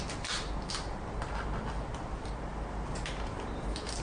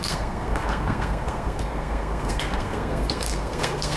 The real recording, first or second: first